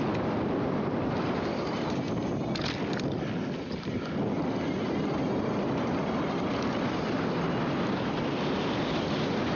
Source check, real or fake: real